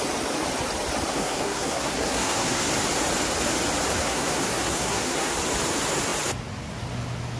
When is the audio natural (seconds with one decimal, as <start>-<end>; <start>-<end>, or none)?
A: 0.0-1.1; 2.7-4.0; 5.3-7.4